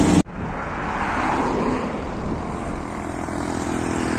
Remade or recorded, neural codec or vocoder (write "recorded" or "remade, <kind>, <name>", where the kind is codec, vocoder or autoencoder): recorded